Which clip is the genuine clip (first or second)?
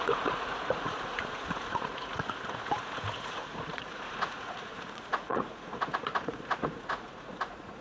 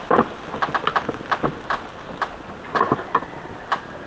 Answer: second